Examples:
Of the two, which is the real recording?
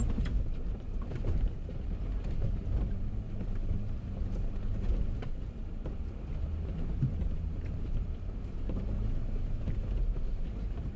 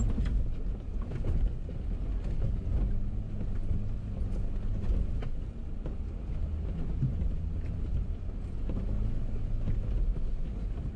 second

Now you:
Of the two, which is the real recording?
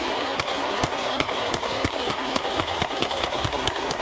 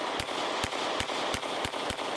second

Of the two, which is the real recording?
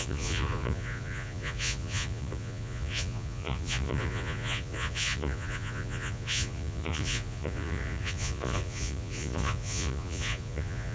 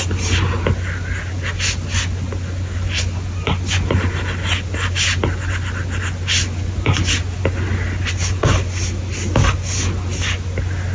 second